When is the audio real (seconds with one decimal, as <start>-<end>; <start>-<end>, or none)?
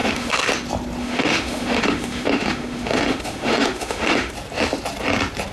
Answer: 0.5-1.0; 4.3-5.5